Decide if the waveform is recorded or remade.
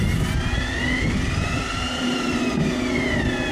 recorded